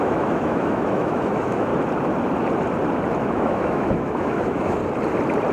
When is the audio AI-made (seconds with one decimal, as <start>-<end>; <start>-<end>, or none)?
0.0-1.7; 3.2-4.8